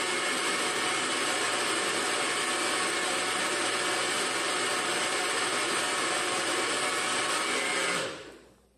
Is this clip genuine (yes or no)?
yes